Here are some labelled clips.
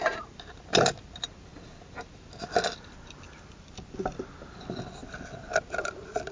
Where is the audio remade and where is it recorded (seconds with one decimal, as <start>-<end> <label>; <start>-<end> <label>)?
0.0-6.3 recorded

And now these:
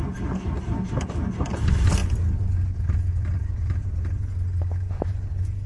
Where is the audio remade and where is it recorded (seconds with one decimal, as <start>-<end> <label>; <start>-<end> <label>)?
0.0-5.7 recorded

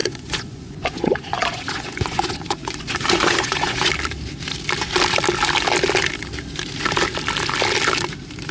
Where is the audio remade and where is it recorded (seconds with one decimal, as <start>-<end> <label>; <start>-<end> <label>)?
0.0-3.9 remade; 3.9-8.5 recorded

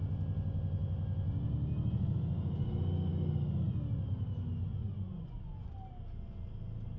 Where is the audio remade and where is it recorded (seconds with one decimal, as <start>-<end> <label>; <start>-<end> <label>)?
0.0-4.7 recorded; 4.7-5.7 remade; 5.7-7.0 recorded

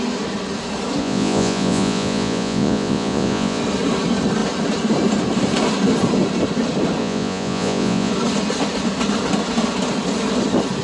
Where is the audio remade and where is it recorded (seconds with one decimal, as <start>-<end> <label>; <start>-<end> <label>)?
0.0-1.0 recorded; 1.0-3.6 remade; 3.6-7.0 recorded; 7.0-8.1 remade; 8.1-10.8 recorded

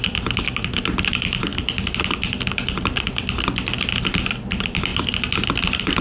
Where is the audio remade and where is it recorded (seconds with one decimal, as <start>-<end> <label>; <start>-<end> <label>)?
0.0-6.0 recorded